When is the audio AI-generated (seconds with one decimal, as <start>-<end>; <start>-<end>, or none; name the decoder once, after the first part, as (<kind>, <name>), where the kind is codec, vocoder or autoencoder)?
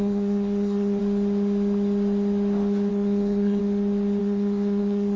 0.0-1.0 (codec, SNAC); 2.9-3.6; 4.2-5.2